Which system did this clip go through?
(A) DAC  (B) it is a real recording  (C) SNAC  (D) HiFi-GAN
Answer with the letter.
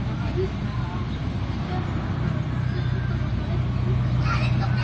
B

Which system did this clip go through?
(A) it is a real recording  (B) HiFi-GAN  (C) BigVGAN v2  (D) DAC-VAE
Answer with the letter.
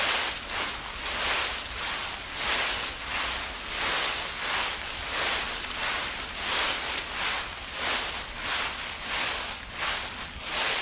A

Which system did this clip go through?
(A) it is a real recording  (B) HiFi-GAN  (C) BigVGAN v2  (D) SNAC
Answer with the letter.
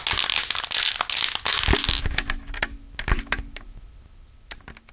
A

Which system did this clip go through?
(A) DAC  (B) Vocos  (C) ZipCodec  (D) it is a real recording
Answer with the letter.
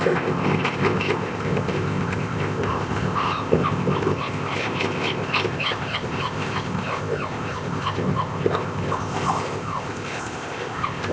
C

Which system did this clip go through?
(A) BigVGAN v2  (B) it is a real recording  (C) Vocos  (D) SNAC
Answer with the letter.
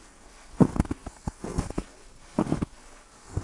D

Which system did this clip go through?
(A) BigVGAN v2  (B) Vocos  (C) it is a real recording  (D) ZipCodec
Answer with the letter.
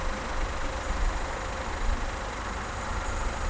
C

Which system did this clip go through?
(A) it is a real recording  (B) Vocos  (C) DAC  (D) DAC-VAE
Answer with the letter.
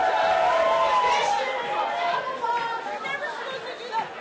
A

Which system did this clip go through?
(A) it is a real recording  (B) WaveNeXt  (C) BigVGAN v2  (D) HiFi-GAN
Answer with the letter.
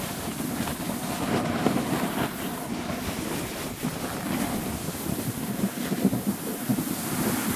C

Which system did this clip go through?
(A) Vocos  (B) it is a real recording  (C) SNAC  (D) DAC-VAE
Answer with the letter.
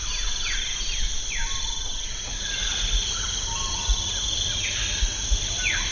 B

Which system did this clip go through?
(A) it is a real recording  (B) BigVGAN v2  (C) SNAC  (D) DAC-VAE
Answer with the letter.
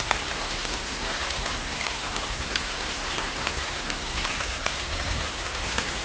C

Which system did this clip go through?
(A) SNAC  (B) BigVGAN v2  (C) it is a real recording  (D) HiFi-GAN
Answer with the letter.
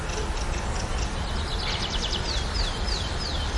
C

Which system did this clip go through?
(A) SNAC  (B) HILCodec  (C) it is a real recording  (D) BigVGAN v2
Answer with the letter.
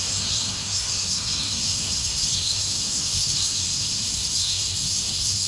A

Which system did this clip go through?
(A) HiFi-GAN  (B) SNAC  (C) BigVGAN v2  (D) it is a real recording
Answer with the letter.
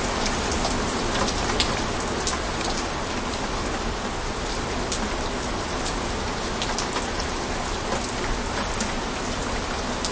D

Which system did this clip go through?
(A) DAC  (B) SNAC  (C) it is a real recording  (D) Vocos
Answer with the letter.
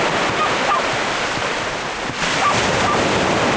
C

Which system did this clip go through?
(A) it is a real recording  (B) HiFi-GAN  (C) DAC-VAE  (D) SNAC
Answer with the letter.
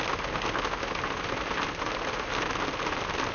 A